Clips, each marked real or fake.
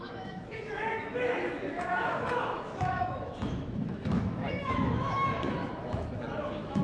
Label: fake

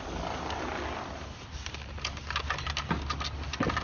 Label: real